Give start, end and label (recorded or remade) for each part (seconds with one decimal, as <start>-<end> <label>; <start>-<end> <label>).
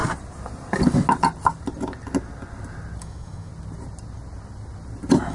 0.0-3.0 recorded; 3.0-3.5 remade; 3.5-5.3 recorded